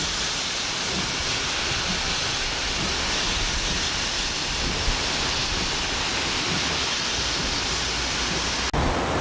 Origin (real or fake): real